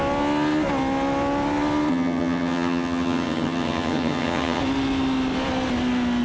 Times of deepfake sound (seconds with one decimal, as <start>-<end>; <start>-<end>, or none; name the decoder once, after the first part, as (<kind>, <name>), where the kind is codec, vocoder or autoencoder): 1.9-4.6 (vocoder, HiFi-GAN)